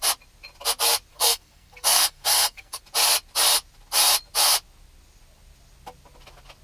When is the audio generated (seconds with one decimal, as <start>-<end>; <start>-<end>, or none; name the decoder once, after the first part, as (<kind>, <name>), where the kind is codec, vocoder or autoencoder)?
1.1-2.8 (codec, SNAC)